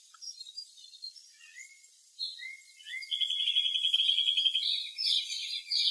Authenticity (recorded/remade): remade